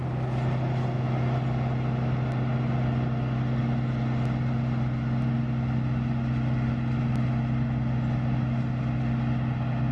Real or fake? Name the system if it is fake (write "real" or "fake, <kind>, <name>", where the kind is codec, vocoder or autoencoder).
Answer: real